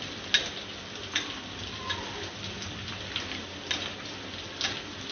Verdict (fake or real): real